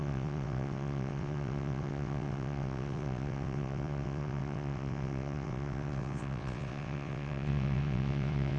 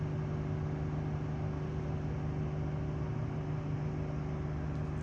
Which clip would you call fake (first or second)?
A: first